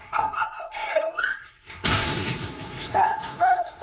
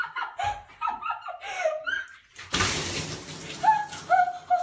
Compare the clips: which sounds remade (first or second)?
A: first